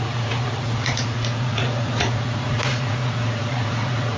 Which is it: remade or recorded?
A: remade